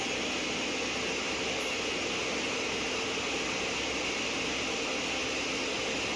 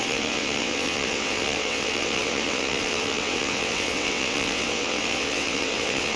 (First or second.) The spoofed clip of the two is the second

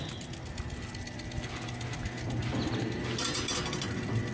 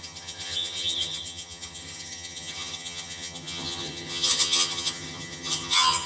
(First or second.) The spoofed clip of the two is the second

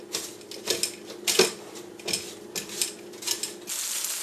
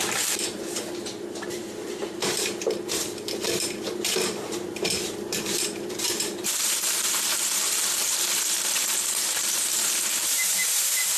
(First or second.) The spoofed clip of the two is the second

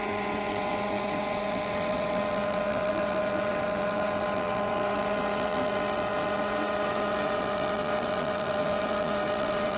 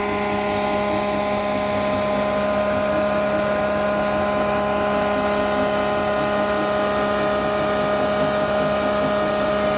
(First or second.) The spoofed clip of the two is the first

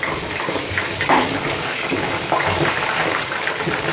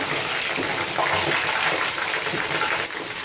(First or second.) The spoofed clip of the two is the first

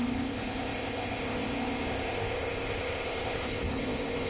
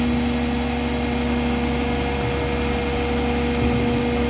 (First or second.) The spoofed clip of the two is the first